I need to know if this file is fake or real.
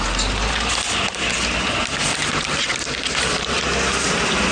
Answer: real